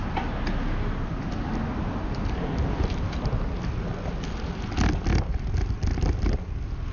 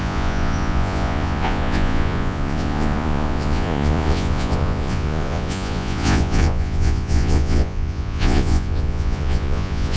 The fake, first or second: second